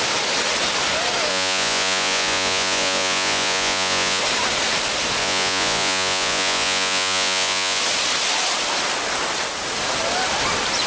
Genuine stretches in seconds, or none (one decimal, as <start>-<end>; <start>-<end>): 0.0-1.3; 4.2-5.2; 7.8-10.9